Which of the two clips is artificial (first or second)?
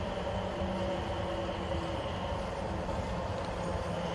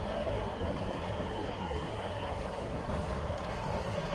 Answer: second